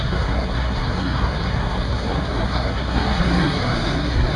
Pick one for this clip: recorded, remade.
remade